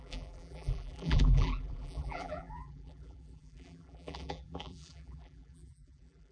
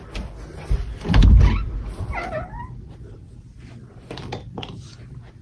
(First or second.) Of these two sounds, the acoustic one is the second